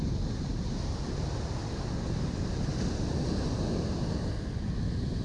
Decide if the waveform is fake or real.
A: real